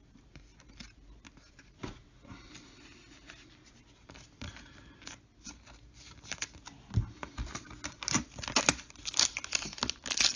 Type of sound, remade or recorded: recorded